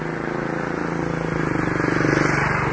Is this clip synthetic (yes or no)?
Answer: no